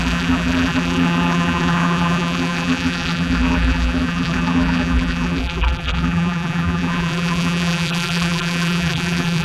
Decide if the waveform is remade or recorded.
remade